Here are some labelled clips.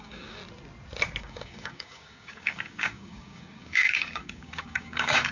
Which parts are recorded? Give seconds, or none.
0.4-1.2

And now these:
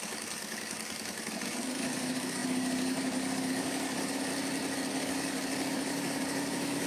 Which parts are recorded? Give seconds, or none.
4.3-4.9

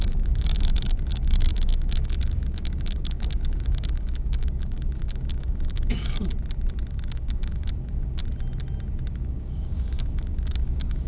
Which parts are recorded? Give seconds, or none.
6.3-6.9; 8.2-9.1